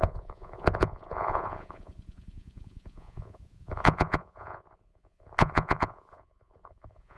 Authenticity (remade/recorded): remade